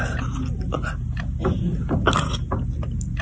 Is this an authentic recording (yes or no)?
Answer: yes